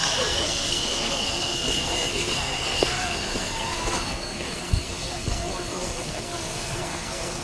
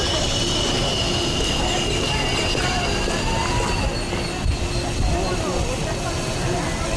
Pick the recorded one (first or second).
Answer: second